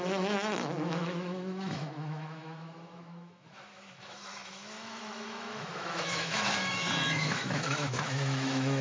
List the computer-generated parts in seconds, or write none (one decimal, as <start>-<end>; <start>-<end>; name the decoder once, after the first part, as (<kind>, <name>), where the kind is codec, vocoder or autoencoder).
0.0-8.8 (autoencoder, DAC-VAE)